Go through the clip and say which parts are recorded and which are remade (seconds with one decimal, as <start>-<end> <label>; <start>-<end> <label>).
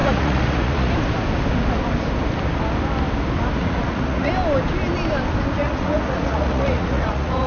0.0-0.9 remade; 0.9-3.6 recorded; 3.6-4.3 remade; 4.3-5.6 recorded; 5.6-7.5 remade